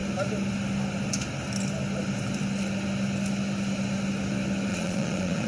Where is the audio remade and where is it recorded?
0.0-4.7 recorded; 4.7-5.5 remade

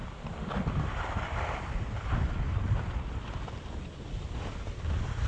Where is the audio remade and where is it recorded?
0.0-5.3 recorded

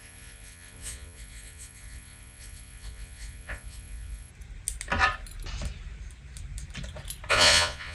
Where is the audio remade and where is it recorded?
0.0-4.3 remade; 4.3-7.3 recorded; 7.3-7.9 remade